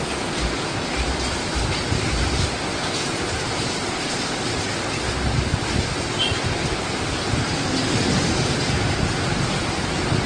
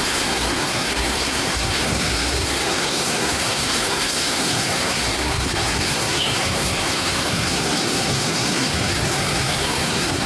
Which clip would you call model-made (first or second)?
second